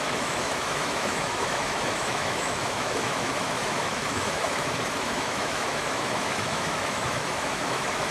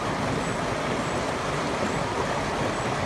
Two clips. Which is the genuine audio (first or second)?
second